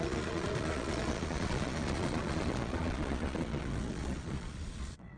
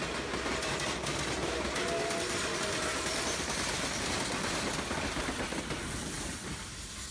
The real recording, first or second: second